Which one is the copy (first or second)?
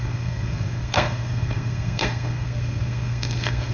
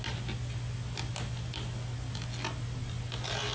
first